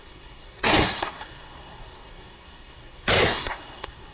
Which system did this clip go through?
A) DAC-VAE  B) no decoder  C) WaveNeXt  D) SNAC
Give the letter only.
D